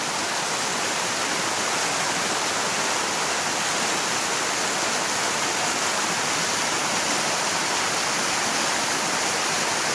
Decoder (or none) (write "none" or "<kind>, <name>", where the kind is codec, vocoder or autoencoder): none